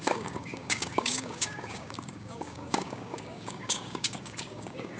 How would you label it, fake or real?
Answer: fake